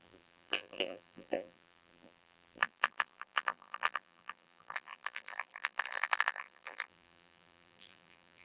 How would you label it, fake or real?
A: fake